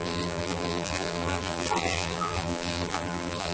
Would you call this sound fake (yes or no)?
yes